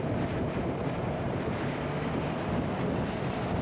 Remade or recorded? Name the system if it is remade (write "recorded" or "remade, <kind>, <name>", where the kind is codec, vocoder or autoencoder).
recorded